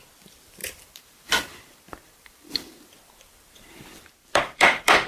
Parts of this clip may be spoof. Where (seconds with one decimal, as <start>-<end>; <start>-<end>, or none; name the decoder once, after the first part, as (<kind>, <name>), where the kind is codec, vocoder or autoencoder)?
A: 0.6-3.1 (vocoder, BigVGAN v2); 4.2-5.1